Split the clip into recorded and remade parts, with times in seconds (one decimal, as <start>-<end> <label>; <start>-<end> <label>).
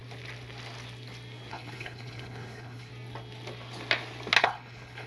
0.0-1.5 recorded; 1.5-2.9 remade; 2.9-4.4 recorded; 4.4-5.1 remade